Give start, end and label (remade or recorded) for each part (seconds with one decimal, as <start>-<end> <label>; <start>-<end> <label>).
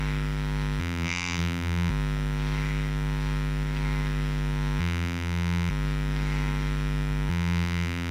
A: 0.0-0.8 recorded; 0.8-1.9 remade; 1.9-4.8 recorded; 4.8-5.7 remade; 5.7-7.3 recorded; 7.3-8.1 remade